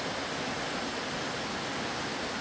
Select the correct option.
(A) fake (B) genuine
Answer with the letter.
B